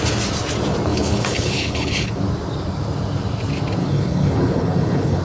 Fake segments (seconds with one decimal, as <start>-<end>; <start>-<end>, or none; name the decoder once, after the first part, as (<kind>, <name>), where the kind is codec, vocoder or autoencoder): 0.9-2.2 (codec, HILCodec); 3.8-5.2